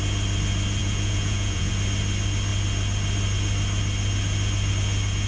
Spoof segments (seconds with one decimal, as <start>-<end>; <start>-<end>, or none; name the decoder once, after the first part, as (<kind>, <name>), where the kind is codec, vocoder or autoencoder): 0.8-1.7 (vocoder, Vocos)